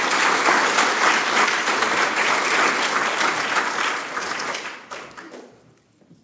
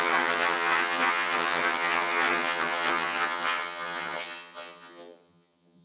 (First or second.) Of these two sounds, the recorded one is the first